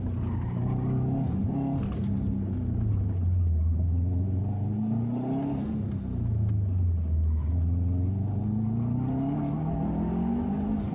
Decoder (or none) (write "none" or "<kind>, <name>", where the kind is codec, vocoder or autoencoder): none